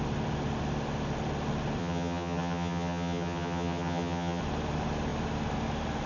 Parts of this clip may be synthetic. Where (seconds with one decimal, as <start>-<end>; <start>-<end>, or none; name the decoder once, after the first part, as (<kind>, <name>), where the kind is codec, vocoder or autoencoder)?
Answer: 1.8-4.4 (vocoder, HiFi-GAN)